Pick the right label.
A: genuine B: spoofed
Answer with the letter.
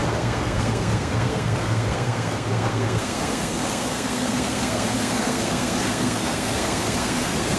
B